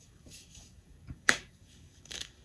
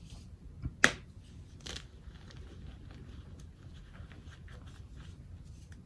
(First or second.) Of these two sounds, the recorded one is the second